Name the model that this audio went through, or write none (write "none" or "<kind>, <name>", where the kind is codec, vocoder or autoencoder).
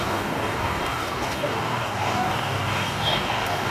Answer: codec, DAC